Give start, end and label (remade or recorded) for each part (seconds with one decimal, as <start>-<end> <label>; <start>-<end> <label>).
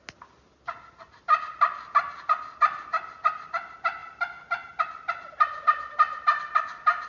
0.0-7.1 recorded